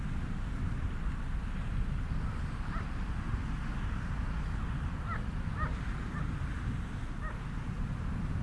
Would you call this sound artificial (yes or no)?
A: no